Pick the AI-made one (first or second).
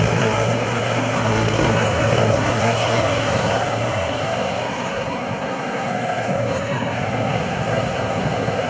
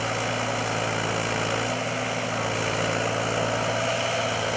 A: first